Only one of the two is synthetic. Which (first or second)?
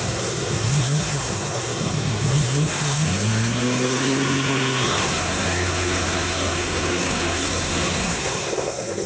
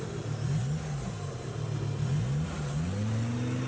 first